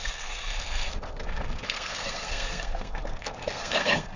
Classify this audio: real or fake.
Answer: fake